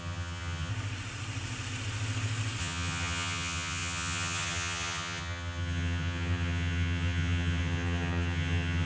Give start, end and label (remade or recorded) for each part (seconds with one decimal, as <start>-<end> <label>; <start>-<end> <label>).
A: 0.0-0.7 remade; 0.7-2.6 recorded; 2.6-8.9 remade